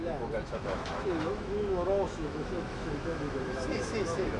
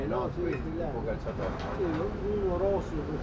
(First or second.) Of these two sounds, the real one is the second